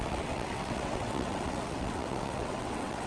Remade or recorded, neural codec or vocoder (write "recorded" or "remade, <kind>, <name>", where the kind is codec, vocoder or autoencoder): remade, vocoder, WaveNeXt